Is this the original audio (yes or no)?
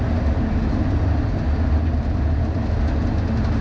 yes